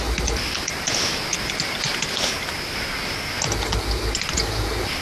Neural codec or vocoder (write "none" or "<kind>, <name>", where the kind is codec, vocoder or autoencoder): none